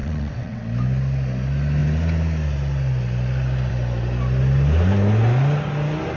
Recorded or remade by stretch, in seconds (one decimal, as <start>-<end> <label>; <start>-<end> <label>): 0.0-0.6 remade; 0.6-6.2 recorded